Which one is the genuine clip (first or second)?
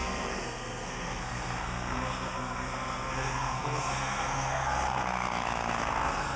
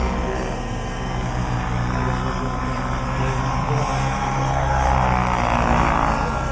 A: second